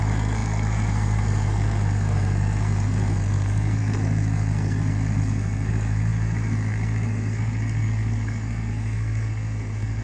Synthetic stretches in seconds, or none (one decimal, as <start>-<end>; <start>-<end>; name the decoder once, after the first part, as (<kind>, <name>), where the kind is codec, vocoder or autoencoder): 0.0-10.0 (codec, SNAC)